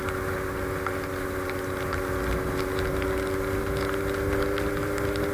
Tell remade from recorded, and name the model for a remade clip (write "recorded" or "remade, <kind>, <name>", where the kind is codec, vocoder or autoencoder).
recorded